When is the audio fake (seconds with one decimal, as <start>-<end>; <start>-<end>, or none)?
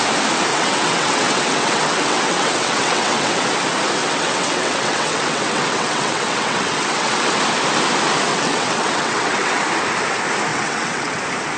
0.5-3.3; 4.0-7.3; 8.3-9.6; 10.5-11.2